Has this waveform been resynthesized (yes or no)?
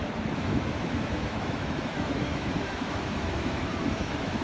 yes